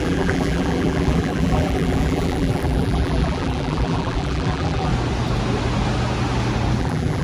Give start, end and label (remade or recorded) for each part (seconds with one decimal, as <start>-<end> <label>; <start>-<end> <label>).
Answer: 0.0-4.9 remade; 4.9-6.8 recorded; 6.8-7.2 remade